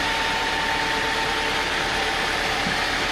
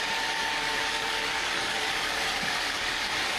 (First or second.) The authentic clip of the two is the first